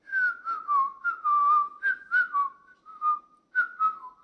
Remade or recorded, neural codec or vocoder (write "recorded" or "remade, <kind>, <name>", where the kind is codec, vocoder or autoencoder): recorded